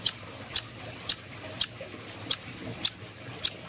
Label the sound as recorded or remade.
recorded